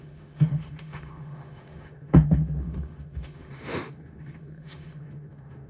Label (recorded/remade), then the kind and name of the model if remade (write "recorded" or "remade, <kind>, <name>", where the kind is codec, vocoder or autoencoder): remade, autoencoder, DAC-VAE